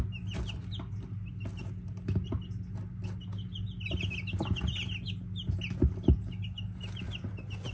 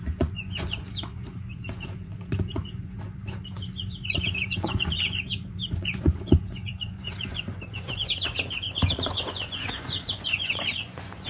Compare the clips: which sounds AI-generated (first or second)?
second